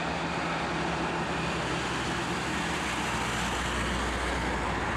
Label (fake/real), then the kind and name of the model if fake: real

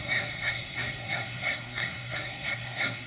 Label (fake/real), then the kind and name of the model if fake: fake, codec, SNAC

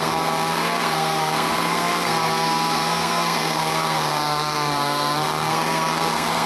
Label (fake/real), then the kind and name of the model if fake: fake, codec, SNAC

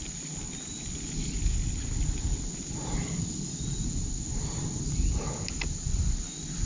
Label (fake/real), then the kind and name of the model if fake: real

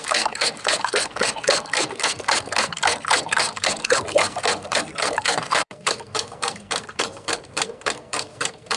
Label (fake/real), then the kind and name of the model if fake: fake, codec, SNAC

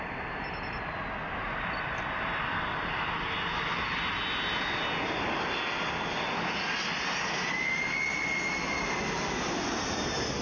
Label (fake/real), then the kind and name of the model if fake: real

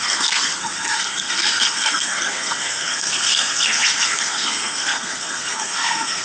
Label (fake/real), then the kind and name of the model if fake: fake, codec, SNAC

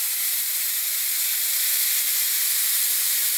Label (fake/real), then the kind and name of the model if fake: real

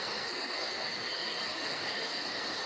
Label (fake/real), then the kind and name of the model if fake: fake, codec, SNAC